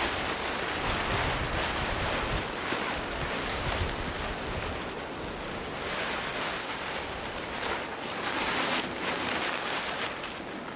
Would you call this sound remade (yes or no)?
no